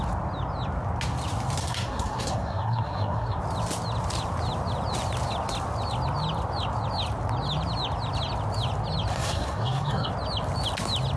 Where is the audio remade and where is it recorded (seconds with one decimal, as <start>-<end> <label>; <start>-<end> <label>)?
0.0-1.6 recorded; 1.6-3.4 remade; 3.4-9.1 recorded; 9.1-10.1 remade; 10.1-11.2 recorded